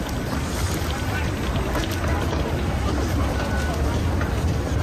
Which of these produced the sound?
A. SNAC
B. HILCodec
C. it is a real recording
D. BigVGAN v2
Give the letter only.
C